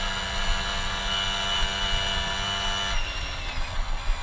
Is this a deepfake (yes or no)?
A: no